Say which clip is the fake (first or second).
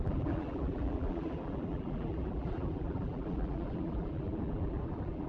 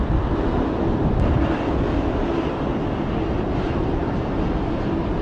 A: first